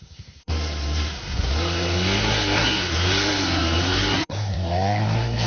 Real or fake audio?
fake